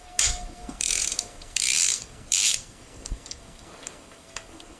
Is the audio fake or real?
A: fake